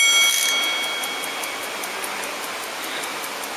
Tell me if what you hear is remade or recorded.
recorded